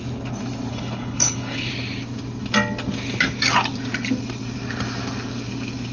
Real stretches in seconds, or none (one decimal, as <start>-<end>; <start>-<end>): 0.0-0.7; 1.7-5.9